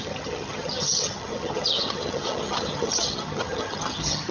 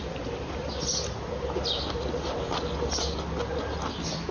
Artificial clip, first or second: first